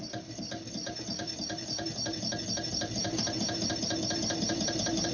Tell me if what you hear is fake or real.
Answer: real